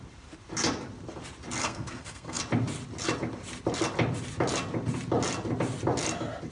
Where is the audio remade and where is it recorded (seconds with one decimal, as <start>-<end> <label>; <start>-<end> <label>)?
0.0-1.6 recorded; 1.6-2.4 remade; 2.4-6.5 recorded